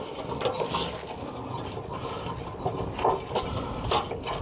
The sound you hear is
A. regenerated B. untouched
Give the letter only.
B